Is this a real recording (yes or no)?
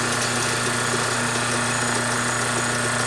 yes